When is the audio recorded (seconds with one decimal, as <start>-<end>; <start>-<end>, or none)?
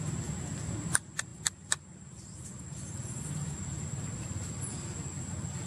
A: 0.0-1.3; 3.6-5.7